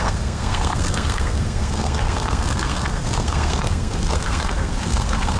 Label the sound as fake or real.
fake